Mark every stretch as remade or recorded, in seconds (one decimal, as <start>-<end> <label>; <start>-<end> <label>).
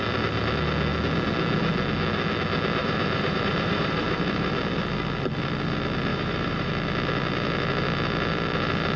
0.0-2.8 recorded; 2.8-4.5 remade; 4.5-6.1 recorded; 6.1-6.7 remade; 6.7-9.0 recorded